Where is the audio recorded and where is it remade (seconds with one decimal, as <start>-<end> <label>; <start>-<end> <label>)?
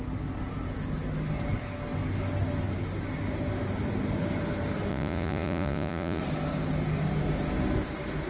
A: 0.0-4.9 recorded; 4.9-6.2 remade; 6.2-8.3 recorded